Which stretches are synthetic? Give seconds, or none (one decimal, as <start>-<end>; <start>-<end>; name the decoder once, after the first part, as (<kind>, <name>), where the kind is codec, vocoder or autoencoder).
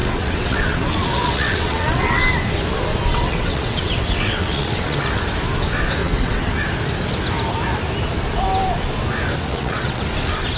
0.0-2.2 (vocoder, WaveNeXt); 3.1-5.2; 6.0-6.5; 9.5-10.0